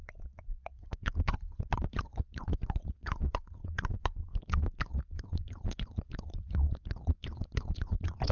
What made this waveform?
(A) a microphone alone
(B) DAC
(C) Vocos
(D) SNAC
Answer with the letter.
C